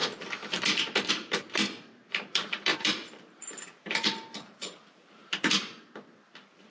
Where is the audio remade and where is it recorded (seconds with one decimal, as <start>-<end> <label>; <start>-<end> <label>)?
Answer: 0.0-5.2 remade; 5.2-6.7 recorded